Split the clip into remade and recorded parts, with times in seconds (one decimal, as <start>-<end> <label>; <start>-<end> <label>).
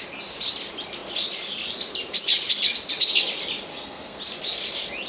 0.0-3.7 recorded; 3.7-4.2 remade; 4.2-5.1 recorded